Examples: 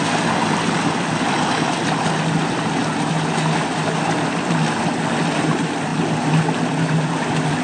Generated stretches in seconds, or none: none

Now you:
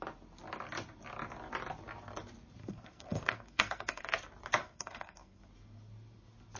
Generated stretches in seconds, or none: 2.6-4.0 (codec, SNAC); 4.6-5.4